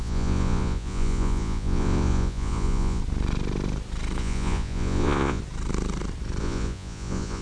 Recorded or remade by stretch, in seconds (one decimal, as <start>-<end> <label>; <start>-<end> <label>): 0.0-3.0 remade; 3.0-4.2 recorded; 4.2-5.4 remade; 5.4-6.4 recorded; 6.4-7.4 remade